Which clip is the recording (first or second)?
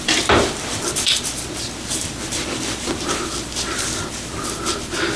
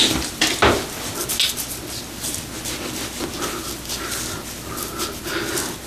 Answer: second